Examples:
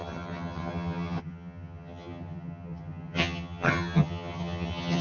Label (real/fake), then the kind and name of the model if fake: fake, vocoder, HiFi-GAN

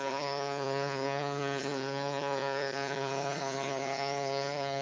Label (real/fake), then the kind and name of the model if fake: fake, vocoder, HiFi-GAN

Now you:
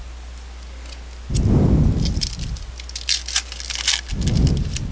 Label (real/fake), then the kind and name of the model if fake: real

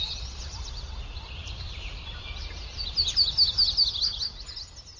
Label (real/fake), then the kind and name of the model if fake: real